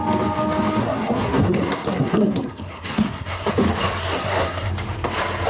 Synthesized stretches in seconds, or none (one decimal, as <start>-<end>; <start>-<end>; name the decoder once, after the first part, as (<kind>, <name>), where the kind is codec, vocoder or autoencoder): 0.8-3.5 (codec, SNAC); 4.0-4.7